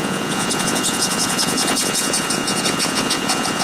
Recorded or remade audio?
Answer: remade